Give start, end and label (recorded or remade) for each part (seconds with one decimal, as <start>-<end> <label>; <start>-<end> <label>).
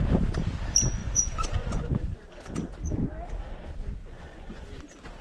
0.0-1.0 recorded; 1.0-2.4 remade; 2.4-4.0 recorded; 4.0-4.8 remade; 4.8-5.2 recorded